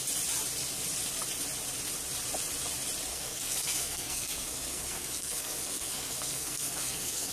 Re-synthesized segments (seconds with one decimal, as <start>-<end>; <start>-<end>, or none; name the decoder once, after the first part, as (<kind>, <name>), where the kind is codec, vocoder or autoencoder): 3.1-7.3 (codec, SNAC)

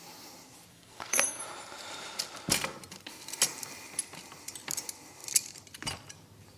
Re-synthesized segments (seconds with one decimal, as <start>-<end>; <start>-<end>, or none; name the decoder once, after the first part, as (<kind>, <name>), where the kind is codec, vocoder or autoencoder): 0.7-1.4 (codec, SNAC)

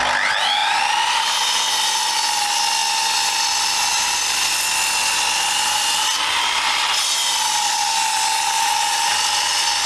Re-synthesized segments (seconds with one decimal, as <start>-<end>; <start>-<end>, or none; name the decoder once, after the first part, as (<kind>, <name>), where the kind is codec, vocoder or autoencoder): none

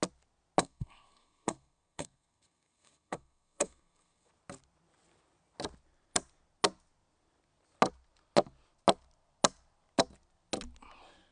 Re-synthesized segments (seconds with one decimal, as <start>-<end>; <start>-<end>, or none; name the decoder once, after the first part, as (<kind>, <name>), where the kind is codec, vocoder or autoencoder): 0.6-4.3 (codec, SNAC)